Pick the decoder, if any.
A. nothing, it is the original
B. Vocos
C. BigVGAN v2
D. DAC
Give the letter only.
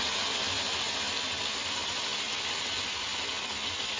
A